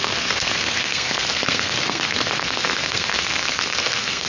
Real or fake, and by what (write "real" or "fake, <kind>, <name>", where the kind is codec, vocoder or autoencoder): fake, codec, SNAC